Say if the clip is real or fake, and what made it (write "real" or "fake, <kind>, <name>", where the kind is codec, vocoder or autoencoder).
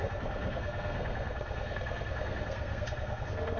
fake, codec, SNAC